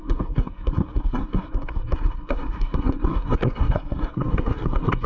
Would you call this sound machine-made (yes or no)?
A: yes